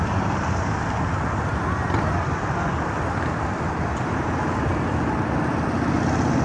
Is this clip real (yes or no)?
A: yes